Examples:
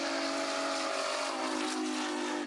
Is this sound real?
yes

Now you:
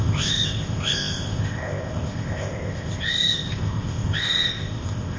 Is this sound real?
no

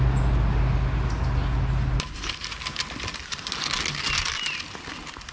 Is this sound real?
yes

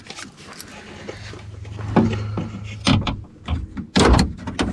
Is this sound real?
yes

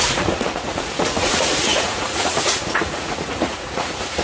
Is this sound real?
no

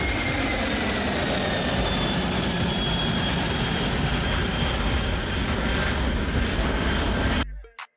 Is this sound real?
yes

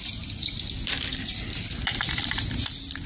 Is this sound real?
yes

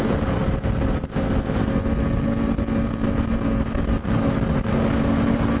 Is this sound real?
yes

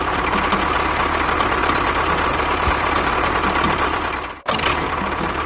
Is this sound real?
yes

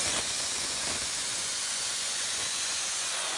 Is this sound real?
no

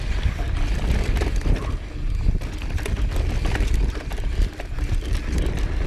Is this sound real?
yes